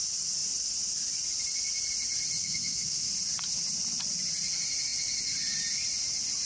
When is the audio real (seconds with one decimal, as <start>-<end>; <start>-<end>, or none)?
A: 0.0-2.4; 3.1-6.4